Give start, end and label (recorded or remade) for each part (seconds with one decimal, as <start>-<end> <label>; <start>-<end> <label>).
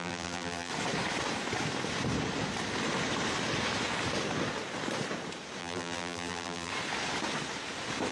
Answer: 0.0-0.7 remade; 0.7-5.6 recorded; 5.6-6.7 remade; 6.7-8.1 recorded